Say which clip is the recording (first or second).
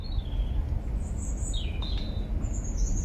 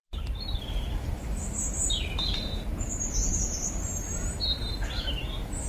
first